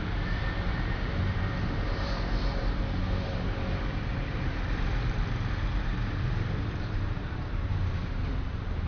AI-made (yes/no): yes